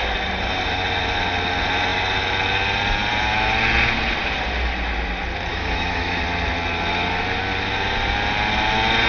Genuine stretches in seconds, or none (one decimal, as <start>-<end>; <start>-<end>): 0.0-5.5; 6.2-9.1

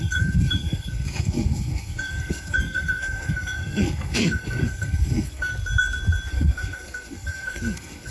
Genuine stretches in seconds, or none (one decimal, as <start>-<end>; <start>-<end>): 5.5-6.3

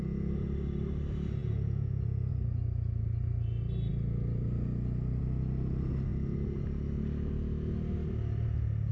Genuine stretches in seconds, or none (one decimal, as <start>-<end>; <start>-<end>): 0.0-1.4; 2.3-8.9

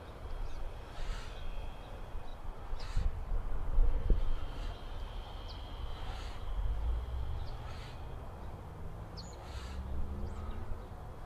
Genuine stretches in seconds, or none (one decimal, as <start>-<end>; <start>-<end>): 0.0-2.3; 3.3-5.9; 6.5-11.3

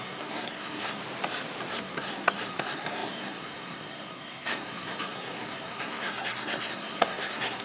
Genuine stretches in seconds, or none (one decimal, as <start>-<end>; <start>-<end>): 1.0-1.7

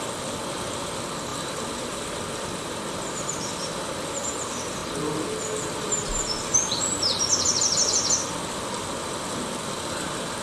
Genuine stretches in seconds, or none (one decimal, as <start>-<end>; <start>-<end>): 0.0-10.4

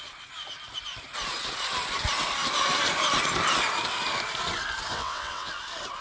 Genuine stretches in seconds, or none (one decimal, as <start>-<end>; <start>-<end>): 0.0-4.9; 5.5-6.0

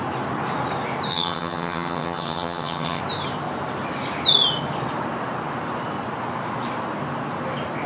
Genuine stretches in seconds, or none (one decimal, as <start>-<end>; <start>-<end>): 0.0-1.1; 3.0-7.9